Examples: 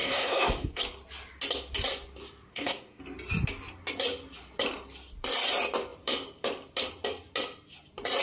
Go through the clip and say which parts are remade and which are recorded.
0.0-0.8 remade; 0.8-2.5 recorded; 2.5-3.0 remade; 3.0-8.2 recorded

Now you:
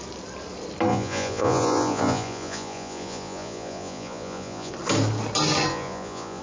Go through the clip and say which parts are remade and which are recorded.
0.0-0.9 recorded; 0.9-4.7 remade; 4.7-5.7 recorded; 5.7-6.4 remade

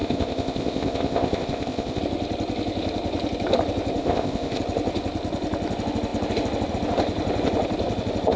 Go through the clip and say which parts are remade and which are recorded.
0.0-2.0 remade; 2.0-4.0 recorded; 4.0-4.6 remade; 4.6-8.4 recorded

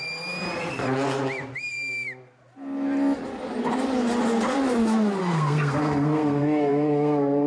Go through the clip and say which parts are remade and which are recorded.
0.0-5.2 recorded; 5.2-7.5 remade